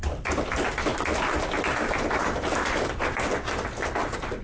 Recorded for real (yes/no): yes